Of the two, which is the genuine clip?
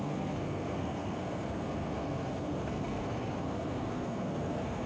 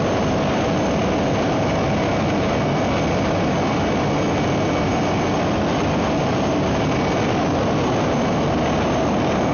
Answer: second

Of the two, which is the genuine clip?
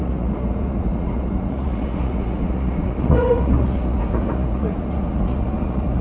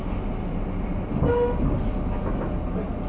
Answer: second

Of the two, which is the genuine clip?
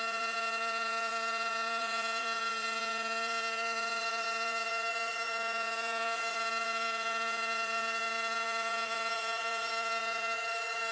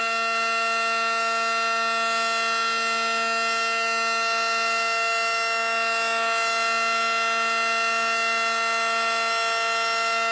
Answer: second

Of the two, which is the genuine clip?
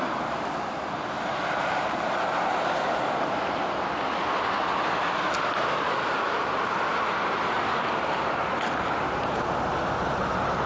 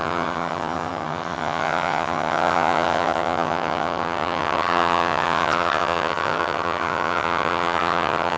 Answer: first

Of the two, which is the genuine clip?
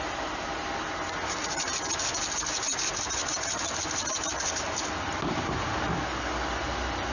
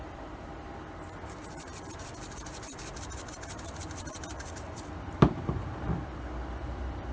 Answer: first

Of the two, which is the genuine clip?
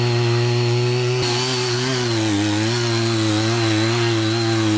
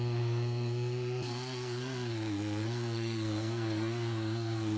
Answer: first